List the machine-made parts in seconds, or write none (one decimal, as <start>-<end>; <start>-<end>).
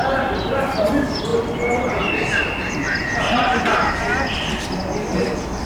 1.3-3.0; 3.4-4.5